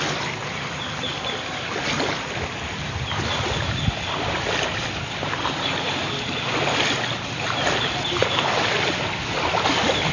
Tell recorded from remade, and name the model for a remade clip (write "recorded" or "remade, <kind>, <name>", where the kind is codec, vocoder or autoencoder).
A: recorded